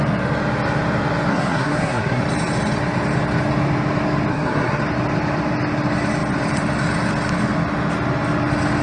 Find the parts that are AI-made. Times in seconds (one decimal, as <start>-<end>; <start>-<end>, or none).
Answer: 1.3-2.2; 4.3-4.8